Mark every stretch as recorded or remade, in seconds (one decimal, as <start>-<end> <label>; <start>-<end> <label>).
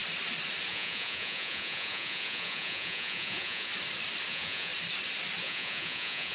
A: 0.0-0.7 recorded; 0.7-3.7 remade; 3.7-4.3 recorded; 4.3-4.7 remade; 4.7-5.4 recorded; 5.4-6.3 remade